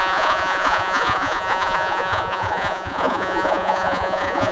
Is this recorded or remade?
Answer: remade